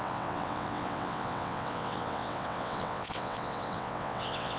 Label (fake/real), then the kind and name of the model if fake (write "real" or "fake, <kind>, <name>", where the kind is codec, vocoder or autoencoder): fake, vocoder, WaveNeXt